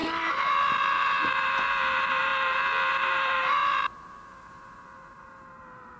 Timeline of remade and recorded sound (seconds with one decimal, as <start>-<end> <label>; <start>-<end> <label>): 0.0-2.3 remade; 2.3-2.9 recorded; 2.9-6.0 remade